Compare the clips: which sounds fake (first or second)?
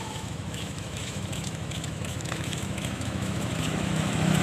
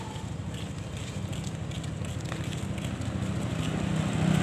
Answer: first